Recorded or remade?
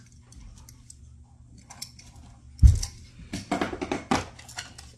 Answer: recorded